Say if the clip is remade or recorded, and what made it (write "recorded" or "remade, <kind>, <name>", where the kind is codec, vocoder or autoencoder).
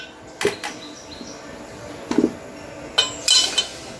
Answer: recorded